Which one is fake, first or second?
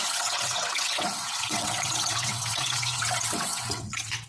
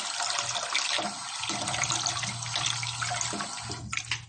first